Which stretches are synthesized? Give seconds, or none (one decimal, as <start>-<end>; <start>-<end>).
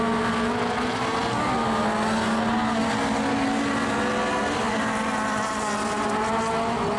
none